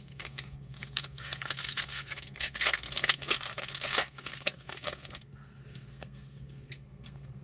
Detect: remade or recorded remade